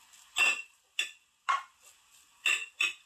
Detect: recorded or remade recorded